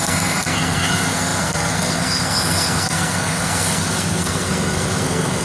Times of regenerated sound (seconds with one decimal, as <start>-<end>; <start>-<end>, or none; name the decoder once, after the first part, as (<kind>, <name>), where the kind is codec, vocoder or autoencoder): 0.0-5.4 (codec, SNAC)